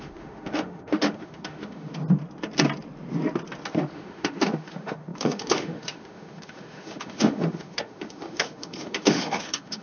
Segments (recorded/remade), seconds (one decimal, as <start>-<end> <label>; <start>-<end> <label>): 0.0-1.9 remade; 1.9-3.7 recorded; 3.7-9.8 remade